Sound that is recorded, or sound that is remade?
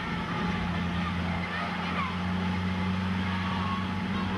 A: recorded